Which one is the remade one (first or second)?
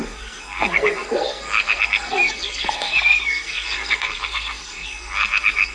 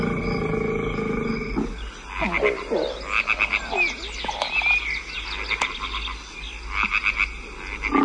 first